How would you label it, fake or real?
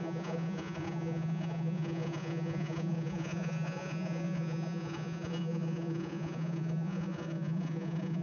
fake